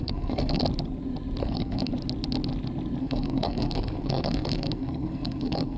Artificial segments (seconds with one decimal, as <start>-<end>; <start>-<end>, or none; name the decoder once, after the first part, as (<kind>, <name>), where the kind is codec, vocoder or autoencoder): 0.0-0.6 (codec, SNAC); 1.4-1.9; 3.0-5.8